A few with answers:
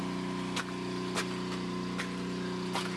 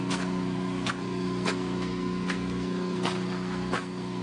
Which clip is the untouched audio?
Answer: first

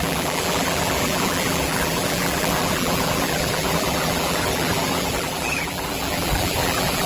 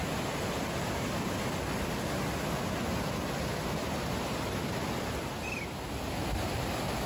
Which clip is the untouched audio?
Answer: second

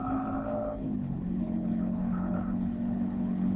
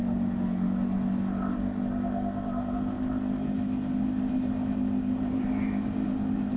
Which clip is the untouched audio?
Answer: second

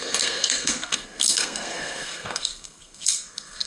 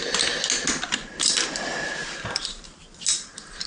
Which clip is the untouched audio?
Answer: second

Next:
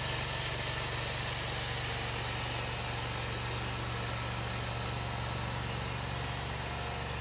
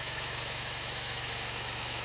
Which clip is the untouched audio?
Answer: first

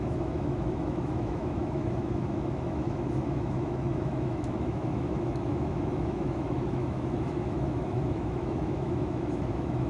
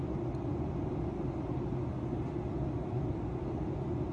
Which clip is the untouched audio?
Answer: second